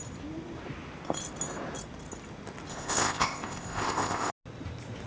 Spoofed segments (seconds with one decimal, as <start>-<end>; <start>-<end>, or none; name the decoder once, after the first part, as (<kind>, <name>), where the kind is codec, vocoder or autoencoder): 2.7-4.3 (codec, ZipCodec)